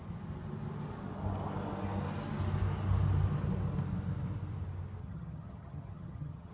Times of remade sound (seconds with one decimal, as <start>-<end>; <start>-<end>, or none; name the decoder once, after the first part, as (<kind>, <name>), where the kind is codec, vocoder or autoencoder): 5.0-6.5 (vocoder, HiFi-GAN)